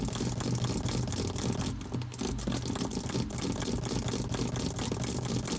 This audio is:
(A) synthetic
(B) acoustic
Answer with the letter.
B